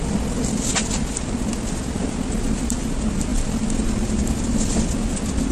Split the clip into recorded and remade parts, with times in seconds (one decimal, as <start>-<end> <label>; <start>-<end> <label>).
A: 0.0-3.3 recorded; 3.3-4.9 remade; 4.9-5.5 recorded